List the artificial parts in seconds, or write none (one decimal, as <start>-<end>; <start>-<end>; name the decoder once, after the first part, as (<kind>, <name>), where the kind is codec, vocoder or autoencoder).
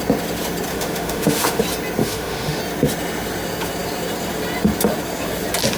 0.7-1.6 (autoencoder, DAC-VAE); 2.0-2.6